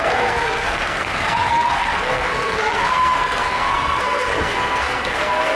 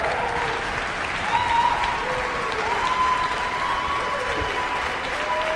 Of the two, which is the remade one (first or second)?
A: first